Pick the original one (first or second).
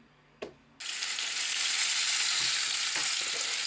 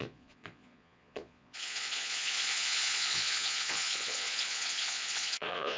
first